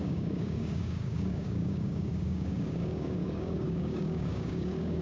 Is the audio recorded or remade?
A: remade